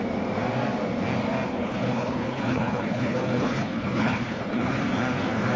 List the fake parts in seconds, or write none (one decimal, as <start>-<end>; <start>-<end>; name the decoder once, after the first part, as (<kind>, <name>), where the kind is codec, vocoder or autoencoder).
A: 1.5-4.7 (codec, HILCodec)